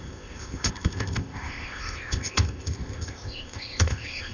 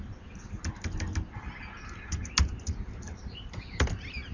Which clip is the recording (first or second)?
second